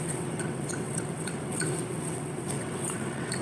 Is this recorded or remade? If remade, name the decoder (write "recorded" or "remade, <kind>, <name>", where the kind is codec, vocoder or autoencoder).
remade, vocoder, WaveNeXt